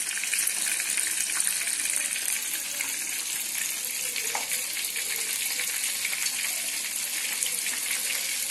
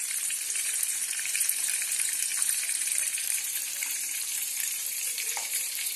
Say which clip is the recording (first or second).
first